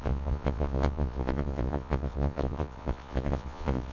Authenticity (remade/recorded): remade